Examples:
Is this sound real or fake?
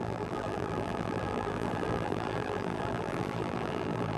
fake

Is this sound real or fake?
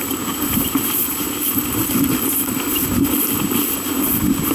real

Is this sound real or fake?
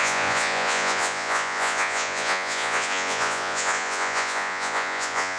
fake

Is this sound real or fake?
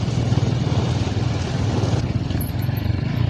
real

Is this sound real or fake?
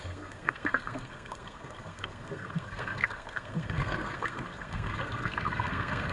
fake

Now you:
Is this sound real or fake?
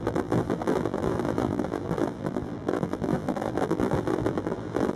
fake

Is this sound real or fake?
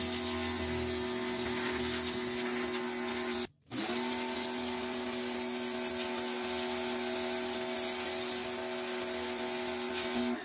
real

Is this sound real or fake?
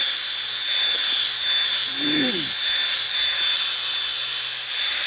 real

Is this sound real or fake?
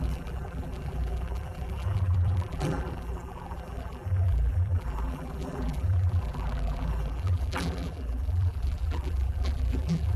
fake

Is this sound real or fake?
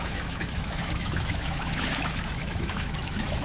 fake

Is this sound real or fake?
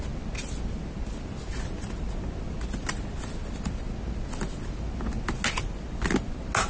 real